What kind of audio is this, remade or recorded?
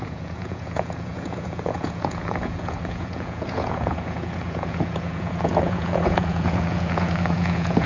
remade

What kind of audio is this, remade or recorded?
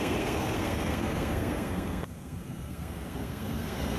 remade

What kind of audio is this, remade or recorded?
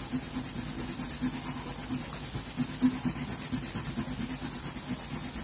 recorded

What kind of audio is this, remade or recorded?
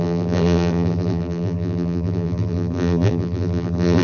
remade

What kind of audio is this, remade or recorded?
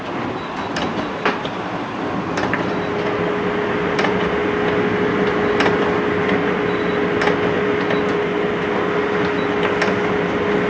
recorded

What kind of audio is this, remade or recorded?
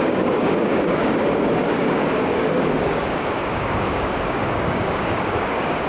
remade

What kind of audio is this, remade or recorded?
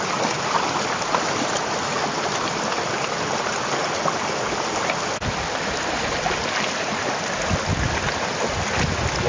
recorded